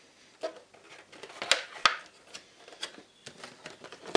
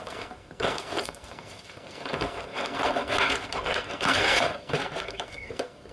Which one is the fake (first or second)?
second